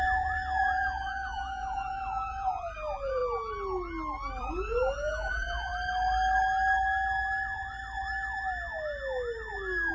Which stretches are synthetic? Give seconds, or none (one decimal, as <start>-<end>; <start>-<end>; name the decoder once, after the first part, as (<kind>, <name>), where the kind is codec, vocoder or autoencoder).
0.0-3.2 (vocoder, Vocos); 4.4-5.7